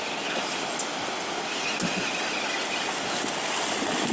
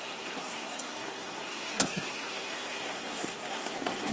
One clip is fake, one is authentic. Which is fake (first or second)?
second